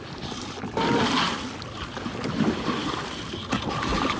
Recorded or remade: recorded